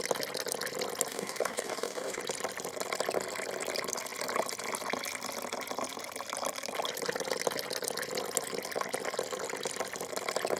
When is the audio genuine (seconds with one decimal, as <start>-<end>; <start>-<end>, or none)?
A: 0.0-1.1; 2.2-10.6